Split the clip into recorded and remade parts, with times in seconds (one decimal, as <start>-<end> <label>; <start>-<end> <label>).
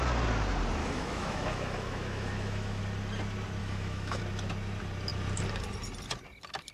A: 0.0-0.8 recorded; 0.8-2.8 remade; 2.8-3.6 recorded; 3.6-4.2 remade; 4.2-6.7 recorded